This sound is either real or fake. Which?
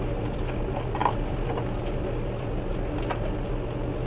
real